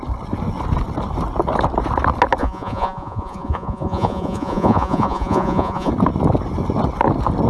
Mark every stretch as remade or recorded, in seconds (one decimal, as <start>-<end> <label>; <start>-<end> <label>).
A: 0.0-2.4 recorded; 2.4-5.9 remade; 5.9-7.5 recorded